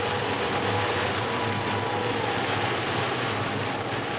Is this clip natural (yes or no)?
yes